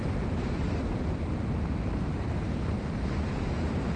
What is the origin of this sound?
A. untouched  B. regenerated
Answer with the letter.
B